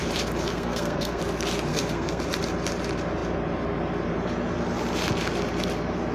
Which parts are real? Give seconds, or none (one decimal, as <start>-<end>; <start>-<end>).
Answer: 0.0-0.5; 1.2-1.7; 2.2-6.1